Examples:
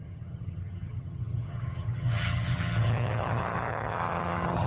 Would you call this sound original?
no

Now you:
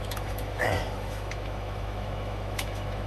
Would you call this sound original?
no